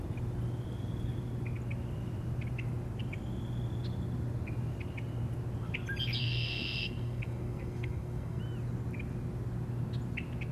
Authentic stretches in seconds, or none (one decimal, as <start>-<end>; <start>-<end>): 0.0-6.2; 8.4-10.5